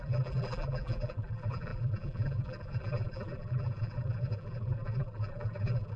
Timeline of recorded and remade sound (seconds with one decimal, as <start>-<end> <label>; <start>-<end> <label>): 0.0-6.0 remade